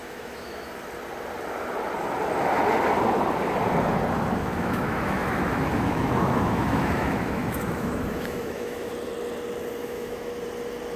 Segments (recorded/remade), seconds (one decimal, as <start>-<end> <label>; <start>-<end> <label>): 0.0-0.7 remade; 0.7-4.4 recorded; 4.4-8.9 remade; 8.9-9.8 recorded; 9.8-10.3 remade; 10.3-11.0 recorded